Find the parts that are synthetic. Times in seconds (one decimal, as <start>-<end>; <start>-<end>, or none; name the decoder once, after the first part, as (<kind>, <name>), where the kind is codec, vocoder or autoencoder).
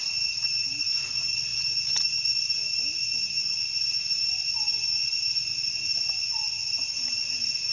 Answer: none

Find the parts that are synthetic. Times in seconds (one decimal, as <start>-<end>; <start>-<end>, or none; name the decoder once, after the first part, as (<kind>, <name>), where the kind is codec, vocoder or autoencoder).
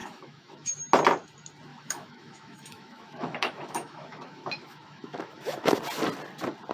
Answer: 0.0-0.8 (autoencoder, DAC-VAE); 1.7-5.7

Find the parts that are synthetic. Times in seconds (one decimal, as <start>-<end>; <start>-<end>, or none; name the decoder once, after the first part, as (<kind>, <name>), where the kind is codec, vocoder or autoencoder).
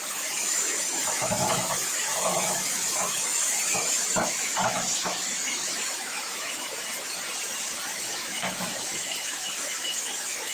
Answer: 0.0-6.7 (autoencoder, DAC-VAE); 8.0-10.5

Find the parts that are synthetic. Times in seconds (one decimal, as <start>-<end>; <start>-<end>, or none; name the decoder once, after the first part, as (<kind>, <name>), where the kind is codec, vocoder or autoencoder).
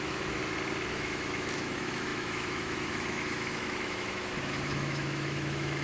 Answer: 0.0-0.4 (autoencoder, DAC-VAE); 0.9-5.8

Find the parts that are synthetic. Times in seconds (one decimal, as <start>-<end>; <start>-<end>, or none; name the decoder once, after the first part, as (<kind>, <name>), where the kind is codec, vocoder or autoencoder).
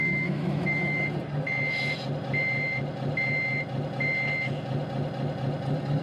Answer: 0.0-1.0 (autoencoder, DAC-VAE)